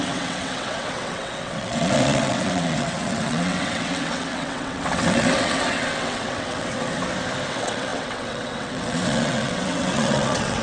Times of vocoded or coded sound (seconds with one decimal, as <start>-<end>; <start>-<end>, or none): 0.0-7.0; 7.5-10.6